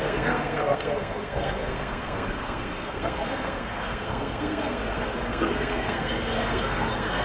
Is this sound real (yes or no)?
no